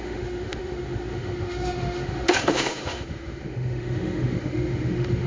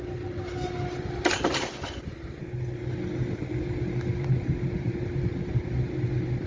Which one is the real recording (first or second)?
second